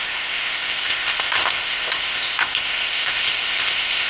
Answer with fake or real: fake